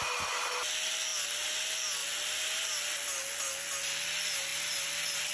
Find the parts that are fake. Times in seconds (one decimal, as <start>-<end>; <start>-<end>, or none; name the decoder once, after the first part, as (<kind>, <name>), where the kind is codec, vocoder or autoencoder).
none